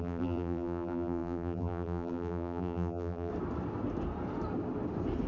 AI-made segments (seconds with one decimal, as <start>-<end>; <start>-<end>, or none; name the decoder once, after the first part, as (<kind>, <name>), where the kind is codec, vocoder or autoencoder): 0.0-3.3 (vocoder, BigVGAN v2)